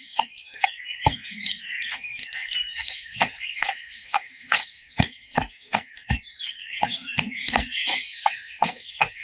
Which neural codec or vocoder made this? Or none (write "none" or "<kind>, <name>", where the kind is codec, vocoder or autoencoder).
codec, SNAC